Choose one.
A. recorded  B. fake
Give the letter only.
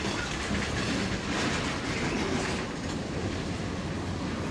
A